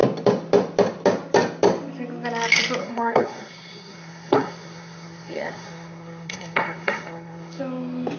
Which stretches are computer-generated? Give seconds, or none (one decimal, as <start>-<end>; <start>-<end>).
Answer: 2.8-7.6